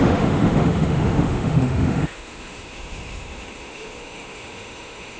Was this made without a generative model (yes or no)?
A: no